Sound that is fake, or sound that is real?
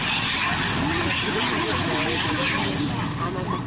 real